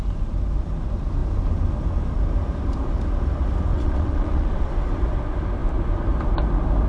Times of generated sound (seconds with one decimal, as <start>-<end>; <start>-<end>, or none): 3.7-4.7